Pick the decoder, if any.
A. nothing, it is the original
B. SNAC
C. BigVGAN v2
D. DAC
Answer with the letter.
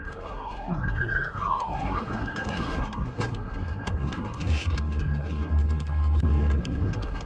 B